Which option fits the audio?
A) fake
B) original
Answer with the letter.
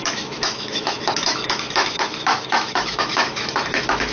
A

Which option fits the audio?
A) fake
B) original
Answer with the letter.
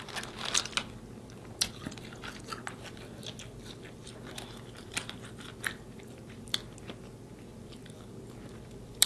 B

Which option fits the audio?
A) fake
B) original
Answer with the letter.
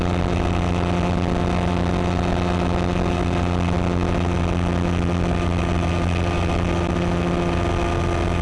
B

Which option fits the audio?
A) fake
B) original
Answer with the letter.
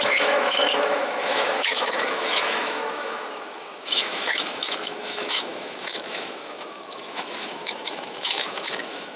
A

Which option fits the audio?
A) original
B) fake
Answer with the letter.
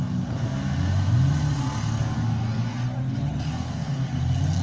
A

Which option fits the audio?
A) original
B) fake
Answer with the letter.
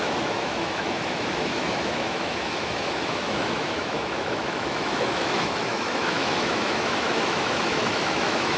B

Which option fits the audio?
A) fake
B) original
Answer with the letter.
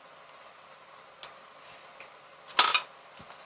B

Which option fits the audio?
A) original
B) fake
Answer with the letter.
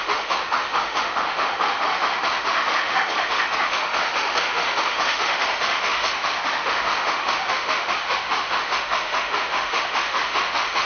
B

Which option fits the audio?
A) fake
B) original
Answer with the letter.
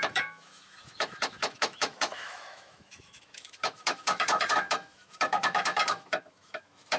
A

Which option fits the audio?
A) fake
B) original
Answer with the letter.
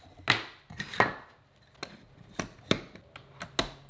B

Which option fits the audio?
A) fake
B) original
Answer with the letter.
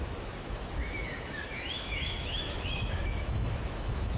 A